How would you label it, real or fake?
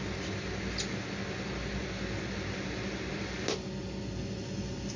real